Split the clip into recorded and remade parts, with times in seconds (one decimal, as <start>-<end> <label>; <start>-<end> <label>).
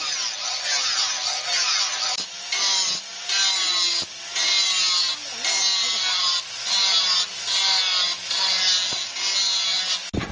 0.0-10.3 recorded